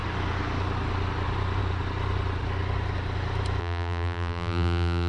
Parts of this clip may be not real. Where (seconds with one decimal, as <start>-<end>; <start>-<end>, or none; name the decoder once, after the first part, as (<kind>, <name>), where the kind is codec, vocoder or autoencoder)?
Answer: 3.6-5.1 (vocoder, BigVGAN v2)